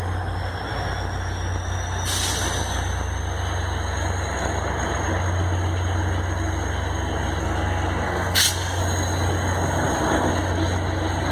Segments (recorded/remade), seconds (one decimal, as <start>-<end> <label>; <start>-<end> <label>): 0.0-7.4 recorded; 7.4-8.8 remade; 8.8-11.3 recorded